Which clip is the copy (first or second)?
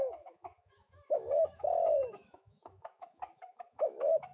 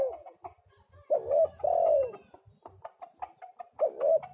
first